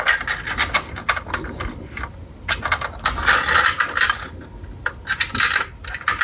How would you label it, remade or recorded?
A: recorded